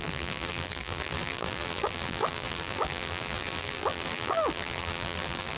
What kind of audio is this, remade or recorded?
remade